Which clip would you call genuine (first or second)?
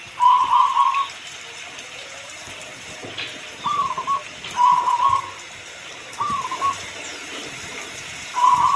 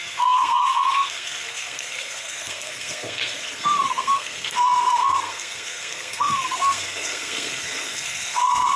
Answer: first